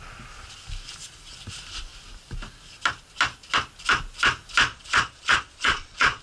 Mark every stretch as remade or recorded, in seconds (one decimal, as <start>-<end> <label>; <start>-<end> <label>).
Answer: 0.0-4.7 recorded; 4.7-6.2 remade

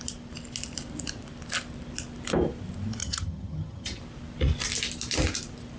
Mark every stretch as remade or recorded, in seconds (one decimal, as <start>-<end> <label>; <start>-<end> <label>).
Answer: 0.0-3.0 recorded; 3.0-4.0 remade; 4.0-5.8 recorded

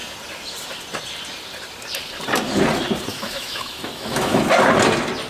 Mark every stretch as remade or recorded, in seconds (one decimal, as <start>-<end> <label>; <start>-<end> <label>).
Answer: 0.0-3.1 recorded; 3.1-4.4 remade; 4.4-5.3 recorded